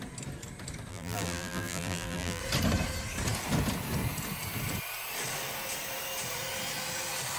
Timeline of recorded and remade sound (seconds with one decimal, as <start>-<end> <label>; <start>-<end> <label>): 0.0-0.9 recorded; 0.9-2.4 remade; 2.4-7.4 recorded